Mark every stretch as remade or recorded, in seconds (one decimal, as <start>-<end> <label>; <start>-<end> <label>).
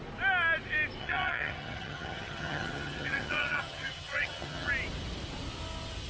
0.0-1.0 recorded; 1.0-4.7 remade; 4.7-6.1 recorded